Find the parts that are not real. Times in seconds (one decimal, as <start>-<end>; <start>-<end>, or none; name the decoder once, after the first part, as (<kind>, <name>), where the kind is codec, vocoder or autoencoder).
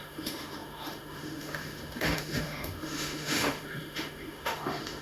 0.0-5.0 (autoencoder, DAC-VAE)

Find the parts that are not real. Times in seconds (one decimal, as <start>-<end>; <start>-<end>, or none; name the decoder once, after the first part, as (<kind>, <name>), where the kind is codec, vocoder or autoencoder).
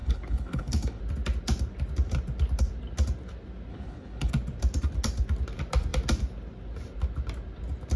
0.0-1.0 (codec, HILCodec); 3.7-4.3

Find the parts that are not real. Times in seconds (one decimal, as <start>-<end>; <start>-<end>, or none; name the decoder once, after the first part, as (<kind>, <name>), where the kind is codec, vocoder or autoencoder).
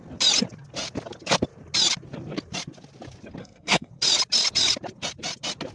3.4-3.9 (codec, SNAC)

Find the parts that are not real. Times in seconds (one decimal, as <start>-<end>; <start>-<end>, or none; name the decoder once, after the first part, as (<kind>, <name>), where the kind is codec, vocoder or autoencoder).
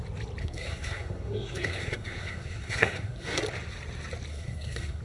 0.4-3.4 (codec, SNAC); 4.3-5.0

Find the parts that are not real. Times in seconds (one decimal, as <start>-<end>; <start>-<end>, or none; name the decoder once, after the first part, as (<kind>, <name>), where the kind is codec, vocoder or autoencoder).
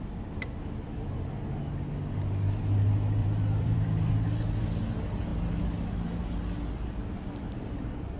3.2-4.1 (vocoder, BigVGAN v2)